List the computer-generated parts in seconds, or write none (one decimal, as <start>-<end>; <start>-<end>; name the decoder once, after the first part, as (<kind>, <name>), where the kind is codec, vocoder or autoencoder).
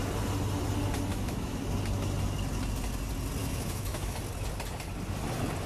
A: 1.1-1.6 (autoencoder, DAC-VAE); 3.4-4.2